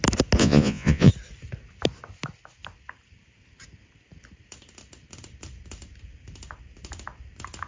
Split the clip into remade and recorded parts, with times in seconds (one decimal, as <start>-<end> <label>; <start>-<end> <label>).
0.0-0.4 recorded; 0.4-1.1 remade; 1.1-7.7 recorded